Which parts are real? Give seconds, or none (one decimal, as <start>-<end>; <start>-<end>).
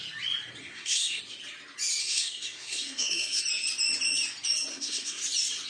0.0-0.6; 1.2-2.0; 3.4-4.7; 5.2-5.7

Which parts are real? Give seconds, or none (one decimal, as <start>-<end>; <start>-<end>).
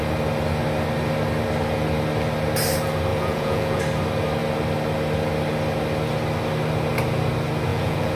0.0-3.1; 3.8-7.7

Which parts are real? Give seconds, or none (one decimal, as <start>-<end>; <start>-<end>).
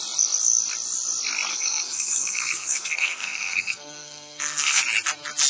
0.0-1.5; 4.8-5.5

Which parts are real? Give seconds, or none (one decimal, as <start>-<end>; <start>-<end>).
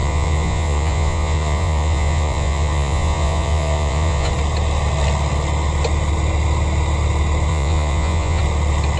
4.3-7.5; 8.4-9.0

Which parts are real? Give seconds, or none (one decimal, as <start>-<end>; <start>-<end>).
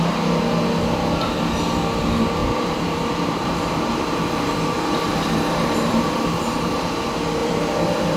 0.0-2.4; 6.7-7.4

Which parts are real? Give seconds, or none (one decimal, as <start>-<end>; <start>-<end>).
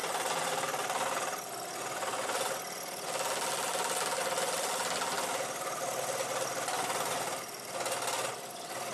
0.0-8.9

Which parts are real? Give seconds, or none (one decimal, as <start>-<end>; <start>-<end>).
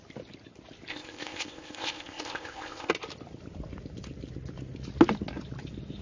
0.0-0.9; 2.9-6.0